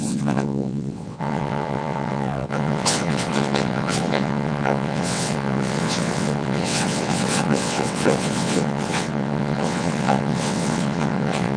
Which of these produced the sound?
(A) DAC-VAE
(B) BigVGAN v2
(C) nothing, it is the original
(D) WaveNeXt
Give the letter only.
D